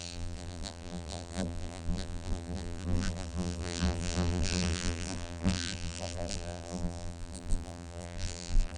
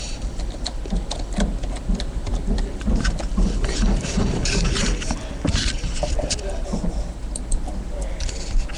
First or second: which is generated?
first